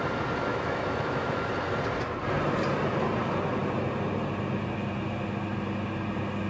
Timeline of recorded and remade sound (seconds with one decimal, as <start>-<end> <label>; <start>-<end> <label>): 0.0-0.5 recorded; 0.5-1.5 remade; 1.5-6.5 recorded